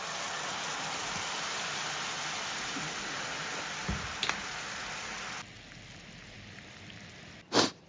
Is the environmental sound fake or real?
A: real